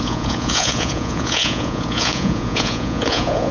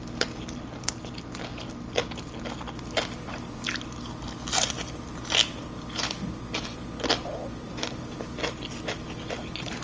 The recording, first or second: second